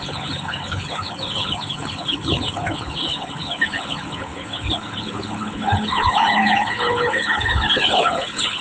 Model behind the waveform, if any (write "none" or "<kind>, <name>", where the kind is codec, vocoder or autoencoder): codec, HILCodec